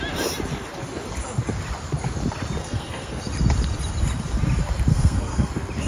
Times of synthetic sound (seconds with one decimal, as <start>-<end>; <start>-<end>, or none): 2.6-3.2; 4.9-5.5